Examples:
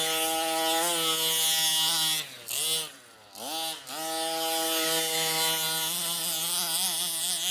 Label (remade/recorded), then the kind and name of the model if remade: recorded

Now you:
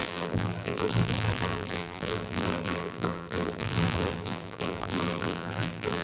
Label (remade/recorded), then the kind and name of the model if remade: remade, vocoder, BigVGAN v2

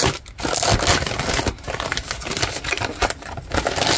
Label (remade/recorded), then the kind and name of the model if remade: recorded